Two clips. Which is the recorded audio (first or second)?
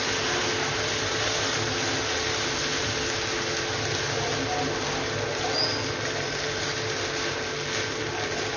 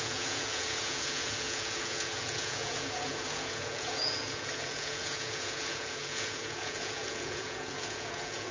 first